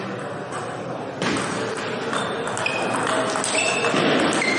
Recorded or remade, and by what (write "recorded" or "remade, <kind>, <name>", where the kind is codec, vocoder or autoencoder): recorded